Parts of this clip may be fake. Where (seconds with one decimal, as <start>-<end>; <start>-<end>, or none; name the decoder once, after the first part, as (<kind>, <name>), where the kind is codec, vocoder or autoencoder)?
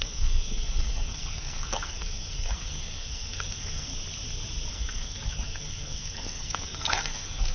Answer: 0.0-3.9 (codec, SNAC); 4.7-7.5